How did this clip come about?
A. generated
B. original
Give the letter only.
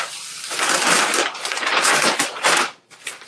B